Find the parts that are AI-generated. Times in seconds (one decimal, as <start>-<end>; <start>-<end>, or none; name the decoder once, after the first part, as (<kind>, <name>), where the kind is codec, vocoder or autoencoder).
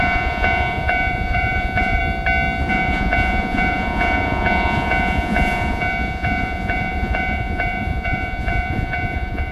0.0-2.0 (vocoder, Vocos); 2.7-9.5